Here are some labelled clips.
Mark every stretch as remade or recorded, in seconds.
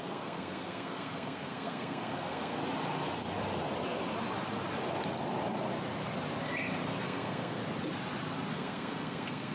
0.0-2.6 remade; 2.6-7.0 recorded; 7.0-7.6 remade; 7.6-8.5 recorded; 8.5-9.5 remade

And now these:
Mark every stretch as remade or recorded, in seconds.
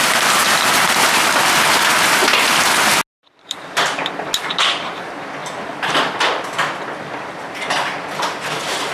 0.0-8.9 recorded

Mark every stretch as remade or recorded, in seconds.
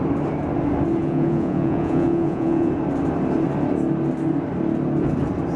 0.0-1.0 recorded; 1.0-2.7 remade; 2.7-5.6 recorded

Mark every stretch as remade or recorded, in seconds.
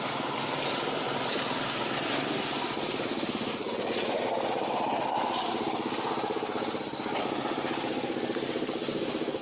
0.0-3.5 recorded; 3.5-4.2 remade; 4.2-9.4 recorded